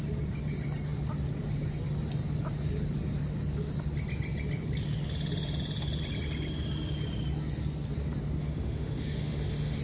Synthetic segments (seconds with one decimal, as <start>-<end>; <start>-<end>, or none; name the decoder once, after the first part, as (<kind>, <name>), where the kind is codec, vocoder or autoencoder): 8.4-9.8 (autoencoder, DAC-VAE)

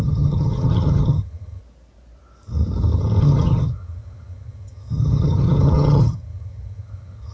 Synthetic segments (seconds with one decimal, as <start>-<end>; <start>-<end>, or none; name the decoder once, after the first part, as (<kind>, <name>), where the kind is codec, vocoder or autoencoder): 0.0-1.6 (vocoder, HiFi-GAN); 3.2-7.3